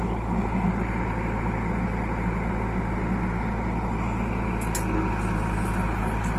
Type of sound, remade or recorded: recorded